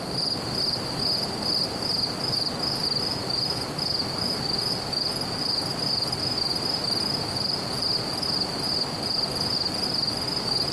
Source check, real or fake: real